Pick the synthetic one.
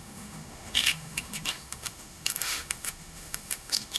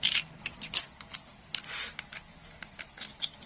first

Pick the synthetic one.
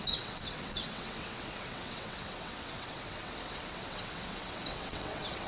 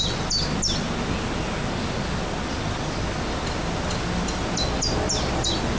first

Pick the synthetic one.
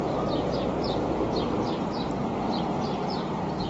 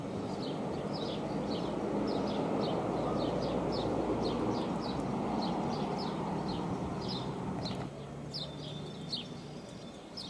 first